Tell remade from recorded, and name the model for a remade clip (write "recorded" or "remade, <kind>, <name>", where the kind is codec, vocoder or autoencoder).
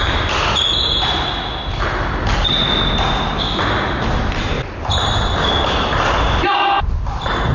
recorded